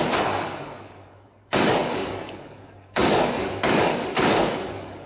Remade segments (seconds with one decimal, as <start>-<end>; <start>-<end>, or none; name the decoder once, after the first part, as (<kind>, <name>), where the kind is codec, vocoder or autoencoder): 0.0-5.1 (codec, DAC)